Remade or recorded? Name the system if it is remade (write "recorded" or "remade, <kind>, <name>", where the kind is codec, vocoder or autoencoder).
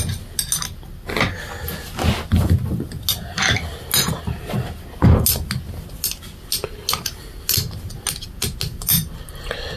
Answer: recorded